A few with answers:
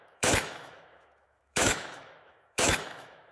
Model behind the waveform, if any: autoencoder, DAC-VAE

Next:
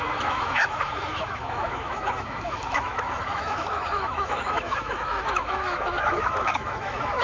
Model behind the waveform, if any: autoencoder, DAC-VAE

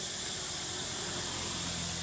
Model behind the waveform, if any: none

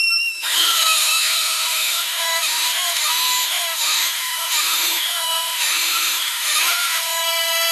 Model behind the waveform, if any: autoencoder, DAC-VAE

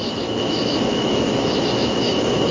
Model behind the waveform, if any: autoencoder, DAC-VAE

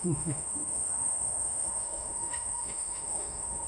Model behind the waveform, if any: autoencoder, DAC-VAE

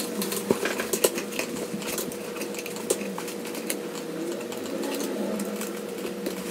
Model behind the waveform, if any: none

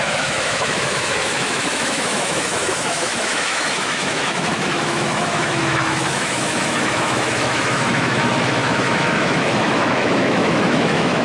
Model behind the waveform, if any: autoencoder, DAC-VAE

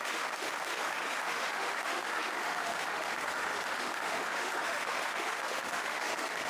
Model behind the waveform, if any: autoencoder, DAC-VAE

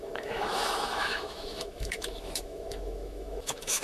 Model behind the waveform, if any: autoencoder, DAC-VAE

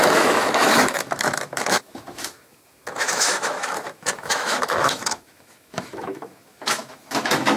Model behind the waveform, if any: autoencoder, DAC-VAE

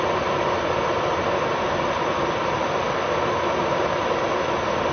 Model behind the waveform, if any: none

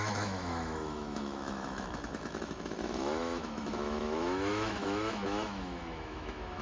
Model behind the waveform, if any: autoencoder, DAC-VAE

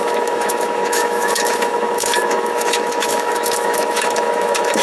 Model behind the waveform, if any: autoencoder, DAC-VAE